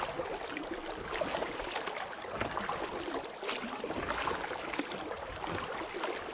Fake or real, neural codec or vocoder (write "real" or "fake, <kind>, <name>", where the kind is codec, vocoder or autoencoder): real